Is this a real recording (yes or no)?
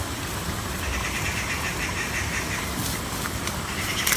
yes